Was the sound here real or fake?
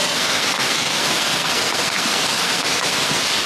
fake